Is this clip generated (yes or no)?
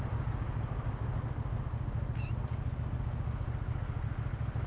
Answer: no